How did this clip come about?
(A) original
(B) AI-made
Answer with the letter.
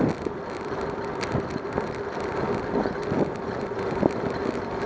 B